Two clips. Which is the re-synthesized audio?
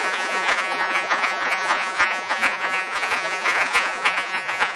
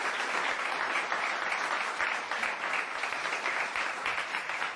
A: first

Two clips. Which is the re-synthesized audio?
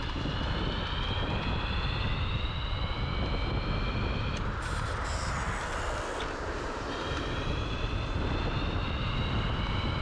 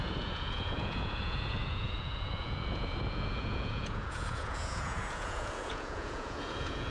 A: second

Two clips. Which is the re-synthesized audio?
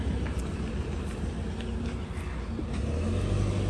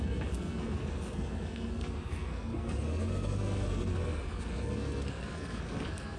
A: second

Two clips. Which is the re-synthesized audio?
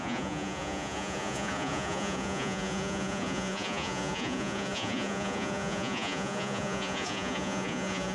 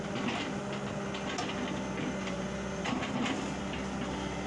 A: first